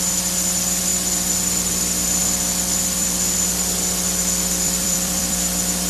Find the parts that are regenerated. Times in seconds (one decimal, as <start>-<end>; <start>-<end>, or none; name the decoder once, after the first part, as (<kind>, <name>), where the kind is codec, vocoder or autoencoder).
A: 0.9-1.7 (vocoder, BigVGAN v2); 2.2-5.9